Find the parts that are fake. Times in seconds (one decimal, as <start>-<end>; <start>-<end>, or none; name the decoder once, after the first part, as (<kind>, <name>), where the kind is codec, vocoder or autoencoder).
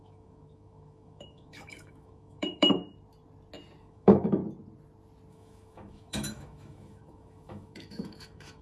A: 0.0-2.8 (autoencoder, DAC-VAE); 3.8-4.4; 5.3-8.6